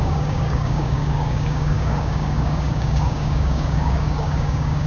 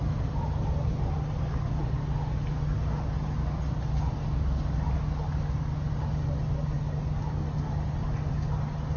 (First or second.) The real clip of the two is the second